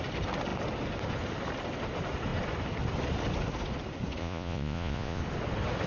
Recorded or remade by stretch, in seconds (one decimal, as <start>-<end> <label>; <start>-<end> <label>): 0.0-4.2 recorded; 4.2-5.2 remade; 5.2-5.9 recorded